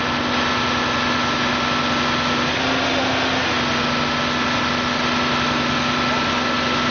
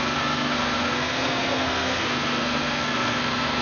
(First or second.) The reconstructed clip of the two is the second